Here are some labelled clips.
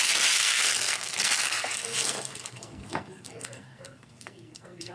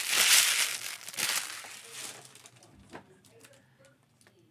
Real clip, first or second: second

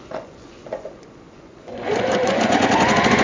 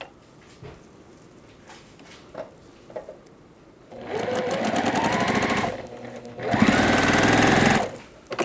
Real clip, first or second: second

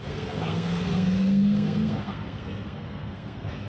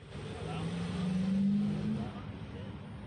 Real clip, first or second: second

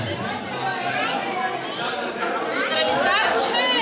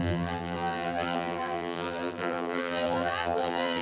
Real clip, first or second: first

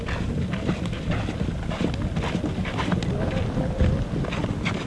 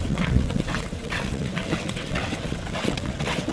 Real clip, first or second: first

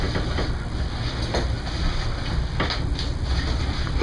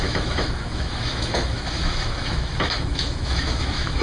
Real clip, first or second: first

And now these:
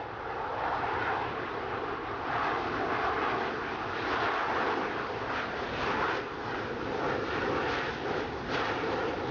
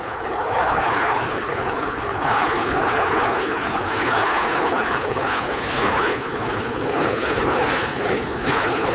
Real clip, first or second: first